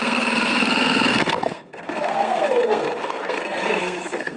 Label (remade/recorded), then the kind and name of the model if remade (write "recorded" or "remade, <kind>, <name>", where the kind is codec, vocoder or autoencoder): remade, codec, SNAC